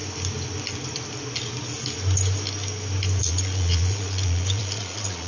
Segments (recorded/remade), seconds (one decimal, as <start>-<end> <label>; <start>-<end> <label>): 0.0-3.2 recorded; 3.2-5.3 remade